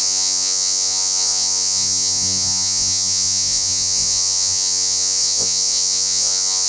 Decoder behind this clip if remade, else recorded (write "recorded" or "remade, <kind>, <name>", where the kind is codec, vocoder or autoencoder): remade, vocoder, Vocos